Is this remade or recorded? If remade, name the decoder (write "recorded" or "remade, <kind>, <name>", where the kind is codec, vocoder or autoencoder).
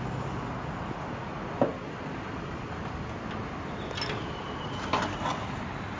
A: recorded